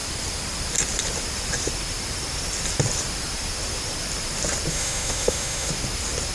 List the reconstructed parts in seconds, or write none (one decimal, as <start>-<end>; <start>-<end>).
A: 4.7-5.7

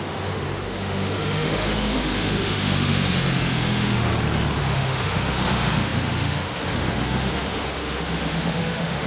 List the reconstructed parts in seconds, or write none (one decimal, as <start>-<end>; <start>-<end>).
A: 0.0-4.1; 4.6-9.1

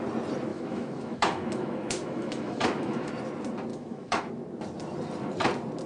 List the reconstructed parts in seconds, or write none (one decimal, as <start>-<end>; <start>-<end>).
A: 0.5-3.1; 3.7-4.3

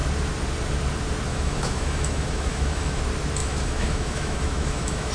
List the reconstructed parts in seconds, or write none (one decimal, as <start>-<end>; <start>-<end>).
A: 1.3-3.0; 3.4-5.1

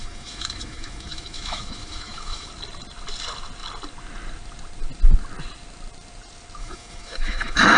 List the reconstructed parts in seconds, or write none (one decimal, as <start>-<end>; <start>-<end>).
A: 0.0-2.5; 6.6-7.8

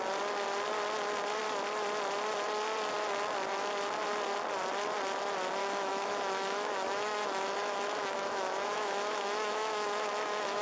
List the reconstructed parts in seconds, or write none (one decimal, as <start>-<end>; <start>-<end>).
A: 5.6-10.6

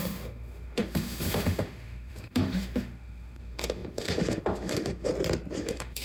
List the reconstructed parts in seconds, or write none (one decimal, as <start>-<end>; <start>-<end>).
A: 0.0-5.1; 5.6-6.0

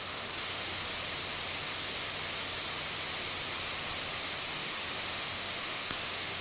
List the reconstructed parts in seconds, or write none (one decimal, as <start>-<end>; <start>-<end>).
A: 0.0-0.8; 4.6-6.4